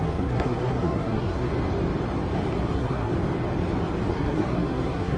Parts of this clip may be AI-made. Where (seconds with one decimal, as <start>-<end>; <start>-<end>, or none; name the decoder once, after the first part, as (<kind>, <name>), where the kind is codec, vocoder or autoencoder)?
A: 0.0-1.5 (codec, SNAC); 2.7-3.1; 4.1-5.2

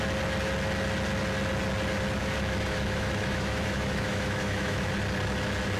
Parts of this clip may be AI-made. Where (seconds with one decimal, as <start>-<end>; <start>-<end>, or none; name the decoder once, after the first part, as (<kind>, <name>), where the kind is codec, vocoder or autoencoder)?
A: 2.2-4.9 (autoencoder, DAC-VAE)

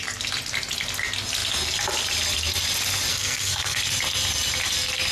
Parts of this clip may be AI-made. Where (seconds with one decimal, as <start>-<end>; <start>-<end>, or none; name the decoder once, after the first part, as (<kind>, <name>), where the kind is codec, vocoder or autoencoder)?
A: 3.1-3.8 (codec, SNAC)

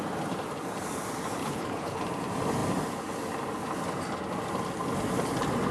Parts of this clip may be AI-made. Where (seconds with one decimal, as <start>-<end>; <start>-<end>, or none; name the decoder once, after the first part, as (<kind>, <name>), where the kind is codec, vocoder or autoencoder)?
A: 1.4-2.0 (codec, HILCodec)

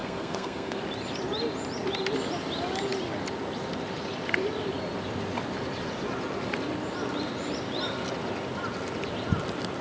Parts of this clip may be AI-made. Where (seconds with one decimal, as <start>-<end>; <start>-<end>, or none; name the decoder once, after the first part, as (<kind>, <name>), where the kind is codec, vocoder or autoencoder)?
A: 0.0-0.8 (codec, SNAC)

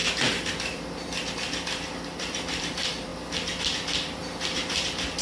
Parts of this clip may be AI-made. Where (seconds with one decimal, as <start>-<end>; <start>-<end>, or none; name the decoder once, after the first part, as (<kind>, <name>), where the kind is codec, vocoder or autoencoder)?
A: 0.0-3.1 (vocoder, BigVGAN v2); 3.6-4.2; 4.7-5.2

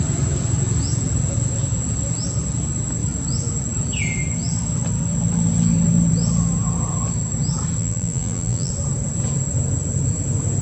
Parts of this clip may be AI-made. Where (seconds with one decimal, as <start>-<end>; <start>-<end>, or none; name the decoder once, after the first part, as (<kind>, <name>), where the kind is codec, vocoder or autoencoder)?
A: 7.8-8.7 (vocoder, BigVGAN v2)